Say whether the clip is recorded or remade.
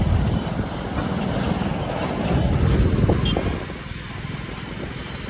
recorded